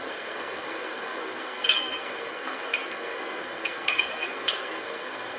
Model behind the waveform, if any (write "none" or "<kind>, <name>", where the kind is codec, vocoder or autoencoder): codec, SNAC